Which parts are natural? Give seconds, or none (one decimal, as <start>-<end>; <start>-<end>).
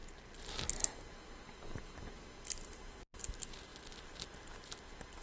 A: 0.0-5.2